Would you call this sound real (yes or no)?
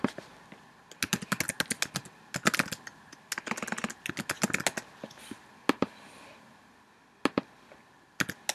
yes